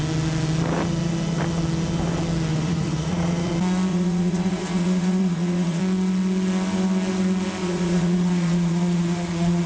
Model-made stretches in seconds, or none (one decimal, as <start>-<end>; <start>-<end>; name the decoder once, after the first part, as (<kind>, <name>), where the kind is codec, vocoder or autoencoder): 2.5-3.5 (vocoder, Vocos); 3.9-5.8; 7.6-9.7